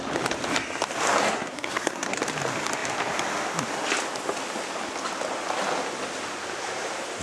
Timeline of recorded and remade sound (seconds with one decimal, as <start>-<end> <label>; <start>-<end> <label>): 0.0-1.2 recorded; 1.2-2.2 remade; 2.2-7.2 recorded